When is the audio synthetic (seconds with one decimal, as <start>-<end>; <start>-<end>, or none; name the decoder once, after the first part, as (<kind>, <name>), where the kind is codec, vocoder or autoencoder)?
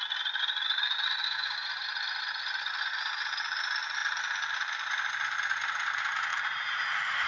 1.2-1.9 (vocoder, BigVGAN v2); 6.3-7.3